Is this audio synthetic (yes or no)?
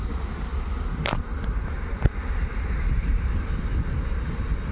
no